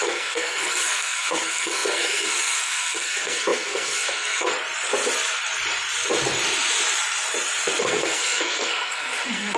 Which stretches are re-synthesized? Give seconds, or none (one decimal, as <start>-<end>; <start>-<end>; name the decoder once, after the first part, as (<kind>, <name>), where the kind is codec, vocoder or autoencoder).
0.0-4.5 (codec, SNAC); 7.8-9.6